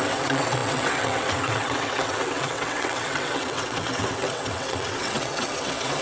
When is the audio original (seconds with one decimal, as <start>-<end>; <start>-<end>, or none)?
none